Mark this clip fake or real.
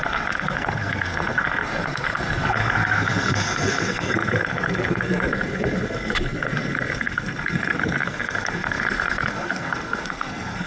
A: fake